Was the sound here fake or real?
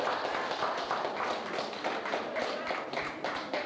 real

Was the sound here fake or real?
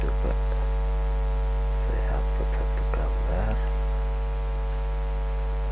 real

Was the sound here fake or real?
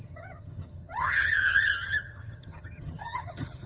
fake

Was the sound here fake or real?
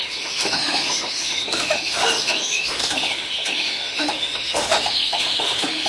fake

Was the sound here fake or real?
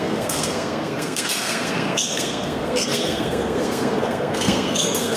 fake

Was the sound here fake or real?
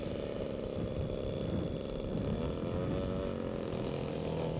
real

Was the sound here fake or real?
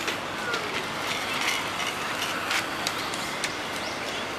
real